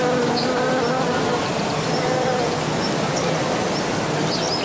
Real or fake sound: real